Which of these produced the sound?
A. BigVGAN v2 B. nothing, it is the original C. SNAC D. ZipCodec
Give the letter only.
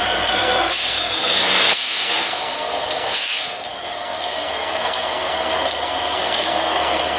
C